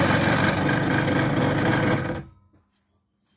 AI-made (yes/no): no